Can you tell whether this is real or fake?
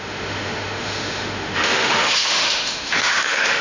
fake